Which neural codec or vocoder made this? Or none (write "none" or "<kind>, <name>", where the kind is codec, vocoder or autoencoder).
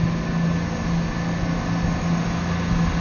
none